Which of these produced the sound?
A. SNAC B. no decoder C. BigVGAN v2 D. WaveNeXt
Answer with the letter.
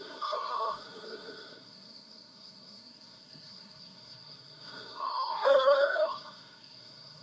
A